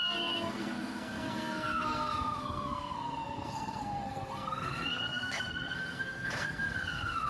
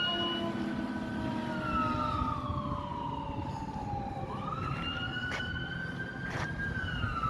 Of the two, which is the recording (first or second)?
second